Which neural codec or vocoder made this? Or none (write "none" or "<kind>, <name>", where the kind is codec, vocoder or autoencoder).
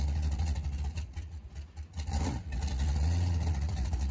vocoder, Vocos